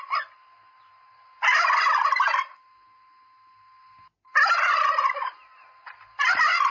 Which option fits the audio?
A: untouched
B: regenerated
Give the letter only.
A